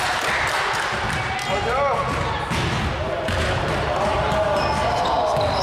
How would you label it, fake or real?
real